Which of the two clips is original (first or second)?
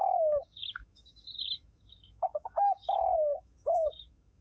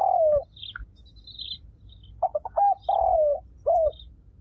second